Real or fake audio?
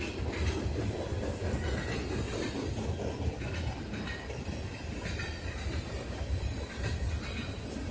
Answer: real